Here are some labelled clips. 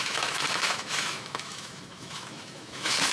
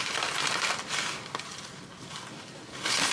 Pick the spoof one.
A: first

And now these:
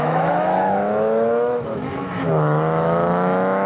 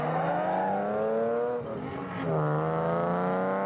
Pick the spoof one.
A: first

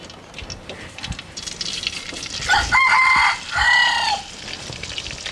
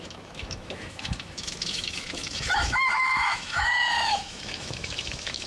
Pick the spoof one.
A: second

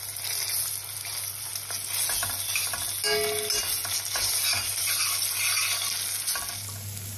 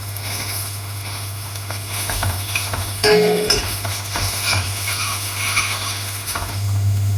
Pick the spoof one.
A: second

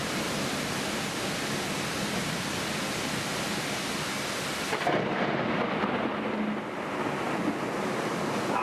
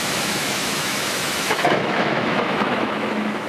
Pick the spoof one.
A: second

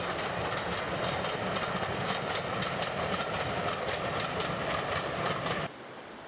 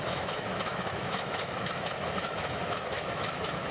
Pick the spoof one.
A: second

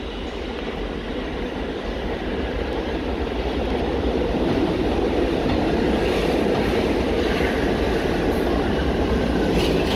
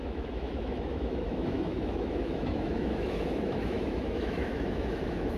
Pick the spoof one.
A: second